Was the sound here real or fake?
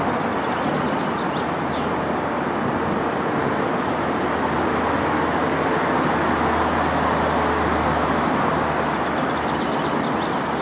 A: real